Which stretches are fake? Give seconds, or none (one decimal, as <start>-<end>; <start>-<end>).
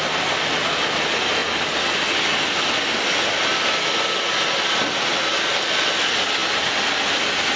none